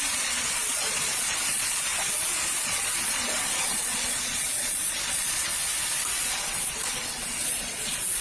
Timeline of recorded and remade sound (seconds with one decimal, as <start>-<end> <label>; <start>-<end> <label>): 0.0-5.5 remade; 5.5-6.3 recorded; 6.3-8.2 remade